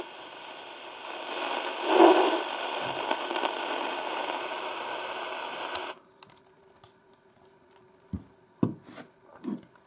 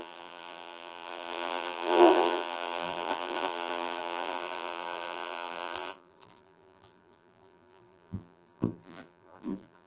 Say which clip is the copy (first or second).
second